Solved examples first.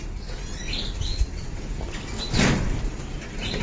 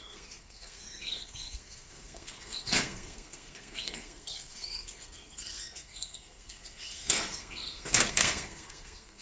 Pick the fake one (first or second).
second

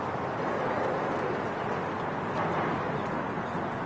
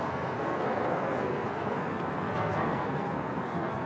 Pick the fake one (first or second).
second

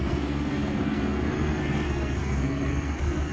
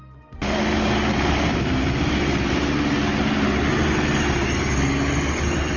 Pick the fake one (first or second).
first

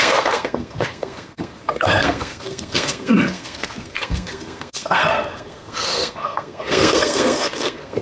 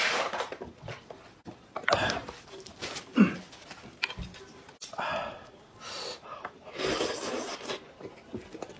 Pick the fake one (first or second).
first